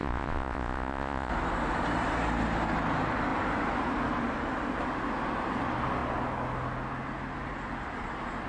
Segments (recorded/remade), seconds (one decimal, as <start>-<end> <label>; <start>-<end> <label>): 0.0-1.3 remade; 1.3-8.5 recorded